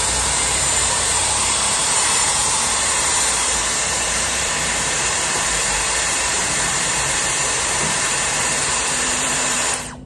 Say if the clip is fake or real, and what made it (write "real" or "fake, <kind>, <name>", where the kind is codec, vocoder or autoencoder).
fake, vocoder, BigVGAN v2